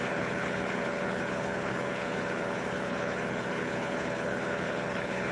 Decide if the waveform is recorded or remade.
remade